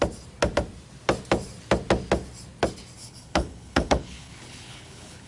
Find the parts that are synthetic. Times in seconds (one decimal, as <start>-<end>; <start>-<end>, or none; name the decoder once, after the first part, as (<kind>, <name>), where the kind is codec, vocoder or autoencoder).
3.0-5.3 (codec, HILCodec)